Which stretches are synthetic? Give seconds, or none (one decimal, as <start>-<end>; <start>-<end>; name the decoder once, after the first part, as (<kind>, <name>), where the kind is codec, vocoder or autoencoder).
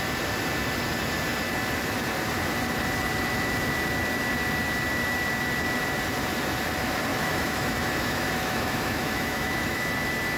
7.1-9.9 (autoencoder, DAC-VAE)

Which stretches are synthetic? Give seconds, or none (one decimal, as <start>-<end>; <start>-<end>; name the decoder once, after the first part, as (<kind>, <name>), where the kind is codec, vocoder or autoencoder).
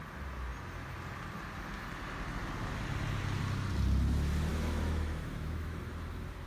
4.5-5.8 (autoencoder, DAC-VAE)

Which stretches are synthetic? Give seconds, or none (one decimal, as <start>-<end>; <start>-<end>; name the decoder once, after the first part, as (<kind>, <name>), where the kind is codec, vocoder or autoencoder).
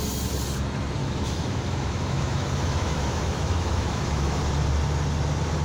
1.0-4.4 (autoencoder, DAC-VAE)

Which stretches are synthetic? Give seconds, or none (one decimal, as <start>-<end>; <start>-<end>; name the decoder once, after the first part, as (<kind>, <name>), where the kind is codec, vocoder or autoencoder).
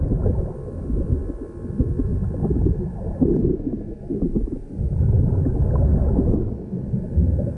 5.9-6.5 (autoencoder, DAC-VAE)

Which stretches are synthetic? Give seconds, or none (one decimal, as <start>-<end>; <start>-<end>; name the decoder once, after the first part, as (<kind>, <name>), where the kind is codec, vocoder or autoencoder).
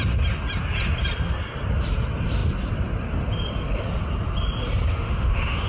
4.9-5.7 (autoencoder, DAC-VAE)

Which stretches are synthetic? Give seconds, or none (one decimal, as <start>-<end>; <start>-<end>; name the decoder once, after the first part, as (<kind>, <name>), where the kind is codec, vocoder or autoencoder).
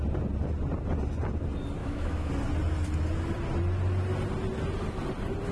1.8-2.3 (autoencoder, DAC-VAE)